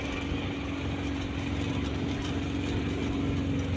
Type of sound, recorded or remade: recorded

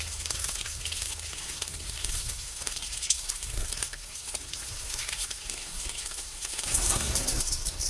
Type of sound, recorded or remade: remade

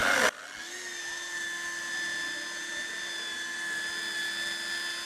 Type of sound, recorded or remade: recorded